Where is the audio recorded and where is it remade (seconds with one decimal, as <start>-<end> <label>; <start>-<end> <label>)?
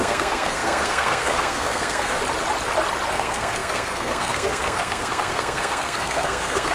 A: 0.0-2.2 remade; 2.2-3.1 recorded; 3.1-6.7 remade